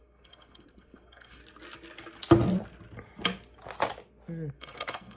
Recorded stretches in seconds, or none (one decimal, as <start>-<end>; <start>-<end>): 1.4-4.5